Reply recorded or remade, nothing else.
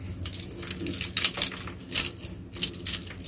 recorded